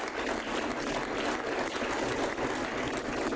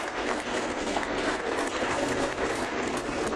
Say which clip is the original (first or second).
first